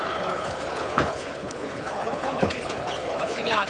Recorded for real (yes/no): no